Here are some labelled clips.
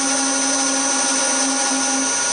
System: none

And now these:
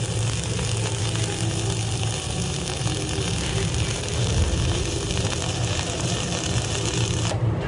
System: none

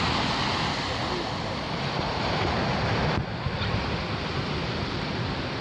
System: none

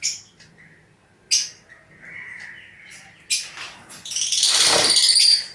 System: none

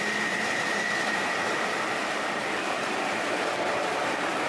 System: vocoder, BigVGAN v2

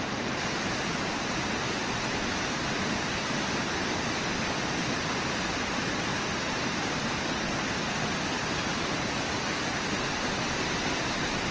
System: none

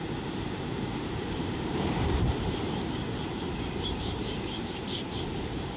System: vocoder, BigVGAN v2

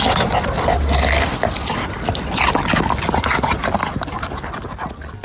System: none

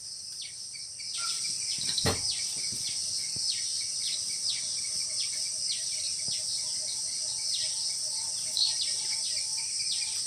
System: vocoder, BigVGAN v2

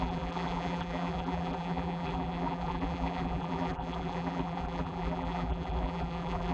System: vocoder, BigVGAN v2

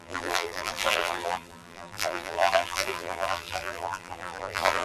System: vocoder, BigVGAN v2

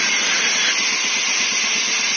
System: none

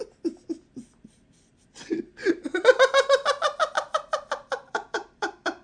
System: none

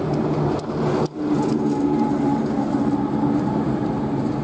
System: none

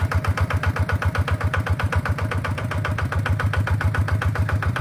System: vocoder, BigVGAN v2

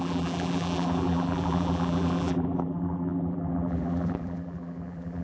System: vocoder, BigVGAN v2